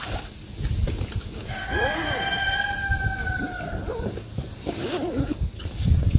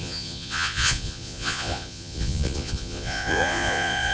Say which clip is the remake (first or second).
second